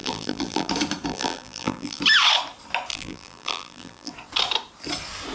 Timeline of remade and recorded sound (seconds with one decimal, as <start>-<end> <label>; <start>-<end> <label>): 0.0-0.7 remade; 0.7-1.1 recorded; 1.1-2.0 remade; 2.0-2.9 recorded; 2.9-4.1 remade; 4.1-5.3 recorded